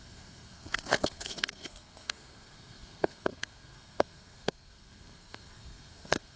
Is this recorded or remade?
remade